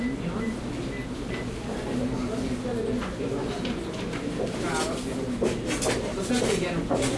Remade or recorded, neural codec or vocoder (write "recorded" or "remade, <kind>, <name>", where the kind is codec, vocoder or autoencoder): recorded